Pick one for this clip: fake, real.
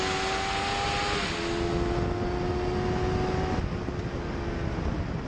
real